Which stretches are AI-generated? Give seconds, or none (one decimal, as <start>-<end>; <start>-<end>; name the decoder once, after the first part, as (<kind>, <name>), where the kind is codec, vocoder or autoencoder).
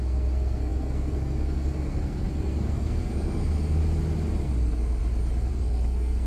0.0-3.8 (codec, SNAC); 4.4-5.0; 5.5-6.3